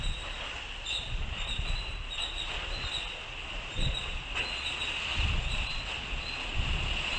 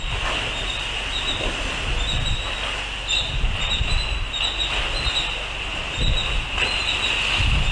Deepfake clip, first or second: first